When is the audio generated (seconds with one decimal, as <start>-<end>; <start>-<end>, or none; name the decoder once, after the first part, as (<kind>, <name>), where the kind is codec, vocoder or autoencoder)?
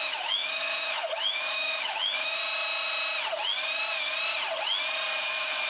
0.0-2.4 (autoencoder, DAC-VAE); 5.2-5.7